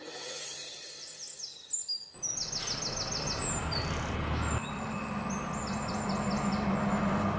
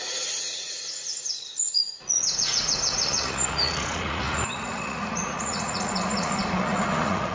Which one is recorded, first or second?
first